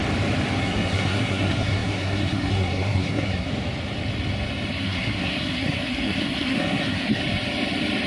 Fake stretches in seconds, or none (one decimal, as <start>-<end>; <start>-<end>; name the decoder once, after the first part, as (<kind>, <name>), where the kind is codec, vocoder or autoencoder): 0.6-3.5 (codec, SNAC); 4.7-7.2